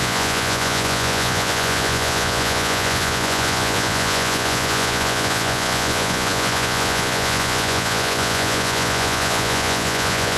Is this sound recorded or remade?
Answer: remade